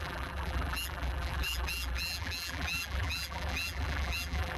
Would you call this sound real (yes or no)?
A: no